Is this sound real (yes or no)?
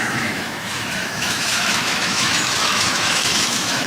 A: no